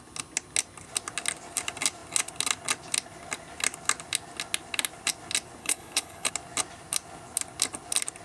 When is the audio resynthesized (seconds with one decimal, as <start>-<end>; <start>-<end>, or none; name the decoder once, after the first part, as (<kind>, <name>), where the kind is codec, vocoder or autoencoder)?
5.6-6.3 (codec, HILCodec)